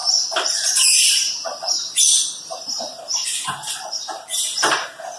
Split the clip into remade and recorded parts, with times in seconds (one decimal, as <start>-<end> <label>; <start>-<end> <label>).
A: 0.0-1.1 remade; 1.1-5.2 recorded